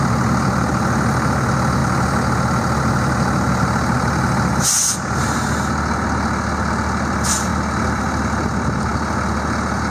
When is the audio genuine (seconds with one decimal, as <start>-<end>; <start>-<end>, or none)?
0.0-9.9